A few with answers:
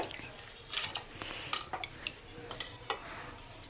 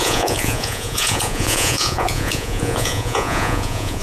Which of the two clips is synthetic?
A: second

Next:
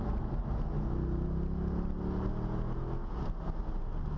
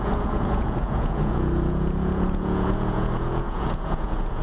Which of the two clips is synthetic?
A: second